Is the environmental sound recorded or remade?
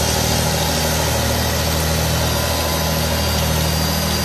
recorded